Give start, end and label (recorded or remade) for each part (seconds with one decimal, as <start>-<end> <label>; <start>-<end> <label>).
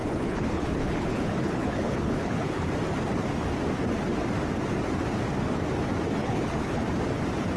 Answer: 0.0-2.7 remade; 2.7-6.2 recorded; 6.2-6.8 remade; 6.8-7.6 recorded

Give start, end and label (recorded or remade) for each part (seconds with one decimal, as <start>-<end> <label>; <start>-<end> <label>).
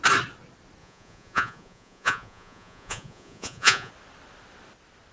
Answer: 0.0-0.8 recorded; 0.8-3.9 remade; 3.9-5.1 recorded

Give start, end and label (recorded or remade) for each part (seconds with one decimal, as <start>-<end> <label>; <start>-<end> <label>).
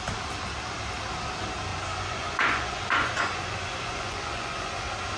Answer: 0.0-1.7 recorded; 1.7-4.8 remade; 4.8-5.2 recorded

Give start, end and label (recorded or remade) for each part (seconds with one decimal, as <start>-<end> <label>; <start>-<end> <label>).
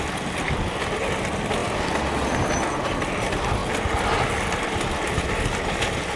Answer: 0.0-6.2 recorded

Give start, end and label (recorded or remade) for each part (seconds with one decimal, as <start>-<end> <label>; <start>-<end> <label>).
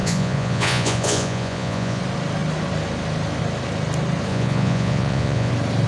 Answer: 0.0-2.0 remade; 2.0-4.3 recorded; 4.3-5.5 remade; 5.5-5.9 recorded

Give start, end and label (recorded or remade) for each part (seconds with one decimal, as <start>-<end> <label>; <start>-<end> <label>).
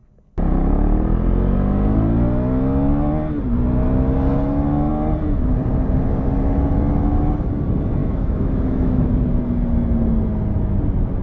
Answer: 0.0-8.0 recorded; 8.0-9.1 remade; 9.1-11.2 recorded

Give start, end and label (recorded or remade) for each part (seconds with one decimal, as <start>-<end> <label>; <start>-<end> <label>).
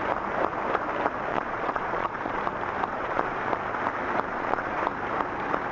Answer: 0.0-1.3 recorded; 1.3-2.4 remade; 2.4-2.9 recorded; 2.9-3.5 remade; 3.5-4.3 recorded; 4.3-4.8 remade; 4.8-5.7 recorded